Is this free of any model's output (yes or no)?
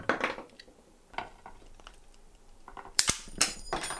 no